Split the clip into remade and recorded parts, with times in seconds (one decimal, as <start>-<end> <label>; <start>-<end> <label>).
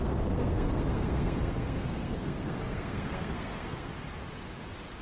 0.0-3.9 remade; 3.9-5.0 recorded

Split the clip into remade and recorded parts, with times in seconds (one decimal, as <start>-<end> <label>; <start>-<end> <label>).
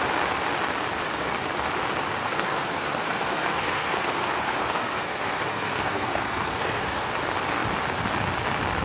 0.0-2.2 recorded; 2.2-7.1 remade; 7.1-8.8 recorded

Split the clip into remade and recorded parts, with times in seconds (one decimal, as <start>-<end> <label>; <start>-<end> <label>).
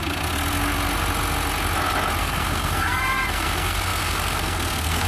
0.0-2.2 recorded; 2.2-5.1 remade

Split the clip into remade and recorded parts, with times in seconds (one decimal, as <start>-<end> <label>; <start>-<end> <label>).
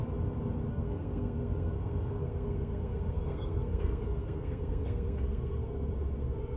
0.0-0.7 recorded; 0.7-6.6 remade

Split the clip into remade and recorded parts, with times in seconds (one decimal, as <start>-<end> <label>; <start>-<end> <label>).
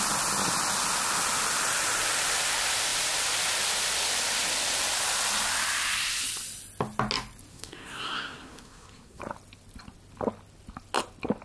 0.0-7.5 recorded; 7.5-9.2 remade; 9.2-11.4 recorded